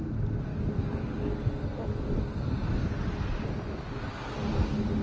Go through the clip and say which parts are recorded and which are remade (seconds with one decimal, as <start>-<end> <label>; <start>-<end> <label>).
0.0-0.5 recorded; 0.5-1.2 remade; 1.2-5.0 recorded